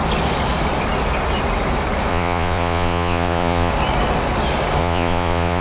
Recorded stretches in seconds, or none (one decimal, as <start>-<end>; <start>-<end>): 0.0-2.1; 3.7-4.8